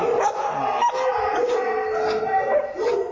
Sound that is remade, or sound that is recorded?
recorded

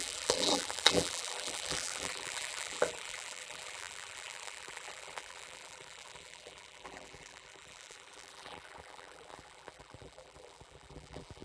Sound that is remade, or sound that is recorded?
remade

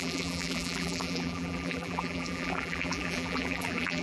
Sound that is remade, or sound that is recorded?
remade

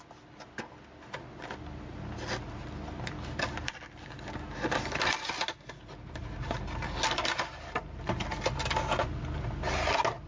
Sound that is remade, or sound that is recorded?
recorded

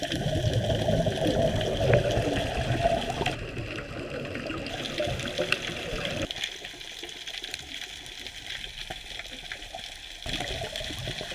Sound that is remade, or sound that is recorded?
recorded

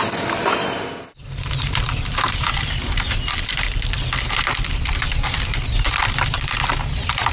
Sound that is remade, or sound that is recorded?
remade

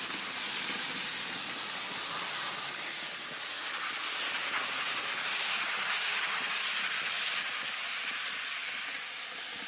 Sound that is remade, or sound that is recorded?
recorded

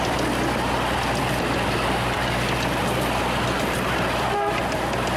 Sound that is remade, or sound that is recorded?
recorded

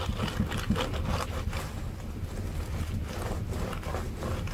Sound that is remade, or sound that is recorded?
recorded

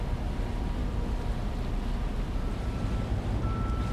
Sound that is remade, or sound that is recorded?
recorded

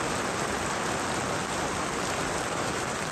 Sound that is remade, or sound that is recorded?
remade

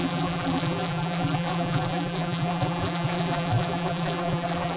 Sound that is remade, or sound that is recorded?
remade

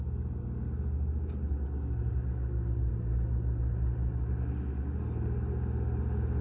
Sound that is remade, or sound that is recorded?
recorded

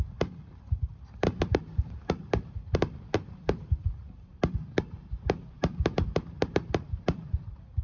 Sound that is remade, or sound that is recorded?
remade